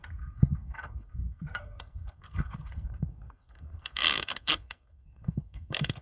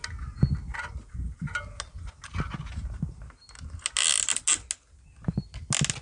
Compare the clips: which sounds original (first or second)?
second